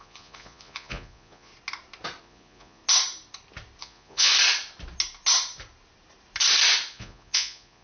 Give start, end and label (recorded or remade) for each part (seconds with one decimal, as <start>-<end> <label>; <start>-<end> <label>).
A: 0.0-1.5 remade; 1.5-2.2 recorded; 2.2-2.8 remade; 2.8-3.8 recorded; 3.8-4.3 remade; 4.3-6.9 recorded; 6.9-7.8 remade